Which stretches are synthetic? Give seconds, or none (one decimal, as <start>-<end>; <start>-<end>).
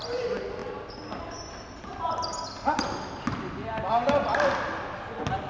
none